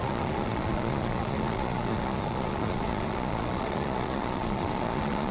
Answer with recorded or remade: remade